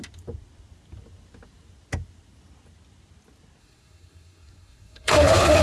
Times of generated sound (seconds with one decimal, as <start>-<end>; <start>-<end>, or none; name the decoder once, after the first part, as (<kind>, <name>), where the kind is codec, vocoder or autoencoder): 3.6-5.6 (codec, SNAC)